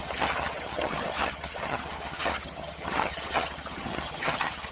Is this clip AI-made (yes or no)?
yes